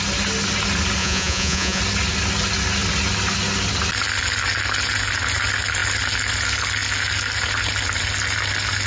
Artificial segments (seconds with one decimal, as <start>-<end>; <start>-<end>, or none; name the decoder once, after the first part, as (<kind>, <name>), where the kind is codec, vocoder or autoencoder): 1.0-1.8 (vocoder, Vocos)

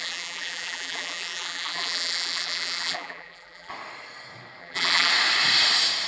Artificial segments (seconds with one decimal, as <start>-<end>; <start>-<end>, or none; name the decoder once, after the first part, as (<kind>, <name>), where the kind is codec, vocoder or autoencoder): 0.0-3.7 (vocoder, BigVGAN v2); 4.6-5.1

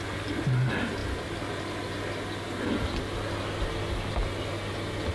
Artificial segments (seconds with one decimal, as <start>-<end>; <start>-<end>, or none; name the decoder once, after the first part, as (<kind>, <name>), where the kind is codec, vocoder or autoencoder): none